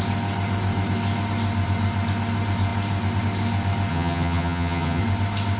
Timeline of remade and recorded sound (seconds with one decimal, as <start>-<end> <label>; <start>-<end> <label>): 0.0-3.9 recorded; 3.9-5.0 remade; 5.0-5.6 recorded